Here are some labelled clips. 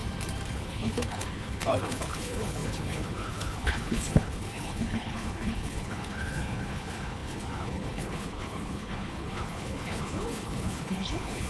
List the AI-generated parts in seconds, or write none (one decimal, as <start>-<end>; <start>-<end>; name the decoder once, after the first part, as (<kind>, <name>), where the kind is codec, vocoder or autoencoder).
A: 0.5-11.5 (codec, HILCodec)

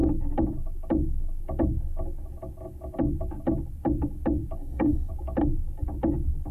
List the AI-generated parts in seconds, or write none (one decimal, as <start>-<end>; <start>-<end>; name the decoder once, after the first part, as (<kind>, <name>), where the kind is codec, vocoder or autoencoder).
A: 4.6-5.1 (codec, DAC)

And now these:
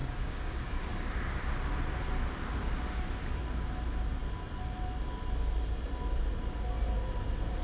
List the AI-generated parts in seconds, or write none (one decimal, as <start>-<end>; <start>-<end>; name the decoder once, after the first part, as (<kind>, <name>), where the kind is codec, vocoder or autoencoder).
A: 0.0-1.1 (codec, DAC)